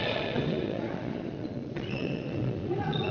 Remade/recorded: remade